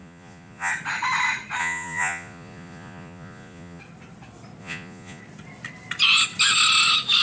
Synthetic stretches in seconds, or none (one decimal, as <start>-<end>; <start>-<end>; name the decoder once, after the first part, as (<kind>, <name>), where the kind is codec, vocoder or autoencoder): 0.0-0.7 (vocoder, Vocos); 1.6-3.8; 4.6-5.2